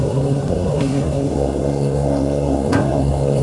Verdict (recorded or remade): remade